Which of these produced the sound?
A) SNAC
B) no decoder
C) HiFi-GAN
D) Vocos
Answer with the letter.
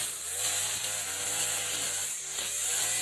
B